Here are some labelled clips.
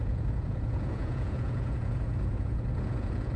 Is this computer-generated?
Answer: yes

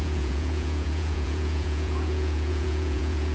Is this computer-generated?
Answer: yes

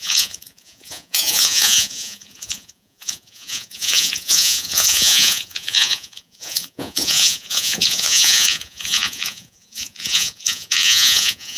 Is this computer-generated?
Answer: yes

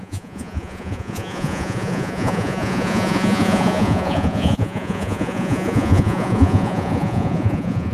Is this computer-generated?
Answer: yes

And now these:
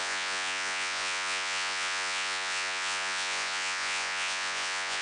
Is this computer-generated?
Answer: yes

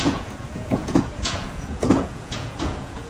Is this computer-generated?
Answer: yes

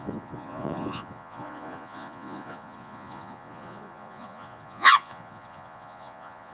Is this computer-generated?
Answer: yes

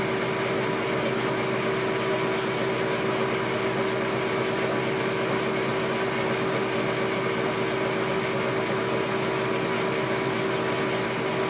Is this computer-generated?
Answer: no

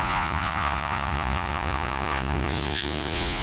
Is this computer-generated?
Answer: yes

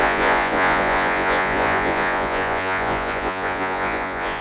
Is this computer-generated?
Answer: yes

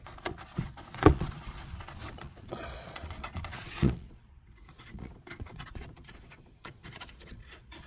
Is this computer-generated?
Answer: yes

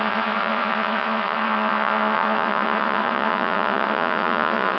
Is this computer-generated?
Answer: yes